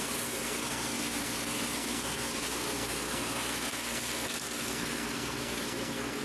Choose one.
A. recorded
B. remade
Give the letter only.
B